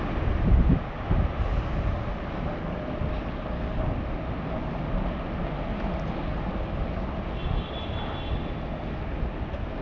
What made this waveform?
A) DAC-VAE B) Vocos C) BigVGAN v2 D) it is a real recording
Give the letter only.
D